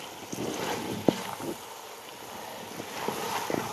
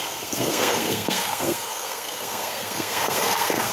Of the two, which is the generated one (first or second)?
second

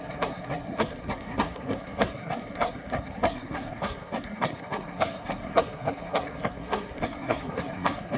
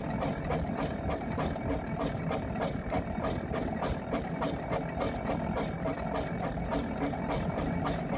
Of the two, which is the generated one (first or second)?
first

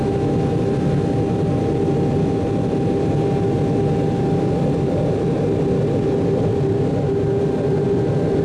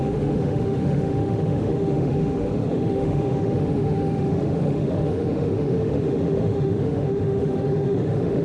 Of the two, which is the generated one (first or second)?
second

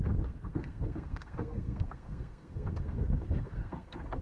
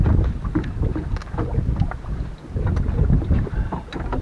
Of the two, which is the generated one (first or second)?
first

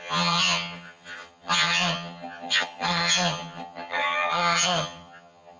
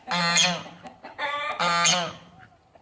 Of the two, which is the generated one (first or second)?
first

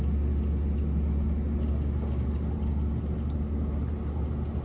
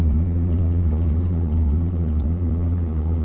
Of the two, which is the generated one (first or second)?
second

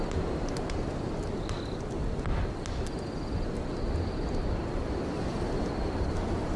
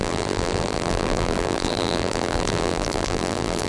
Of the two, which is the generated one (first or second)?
second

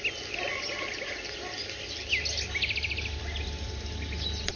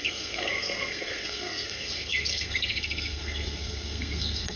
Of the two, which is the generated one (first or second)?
second